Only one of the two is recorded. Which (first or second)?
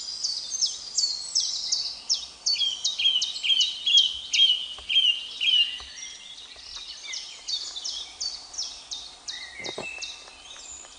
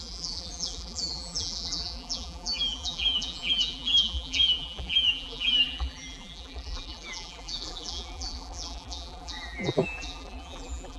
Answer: first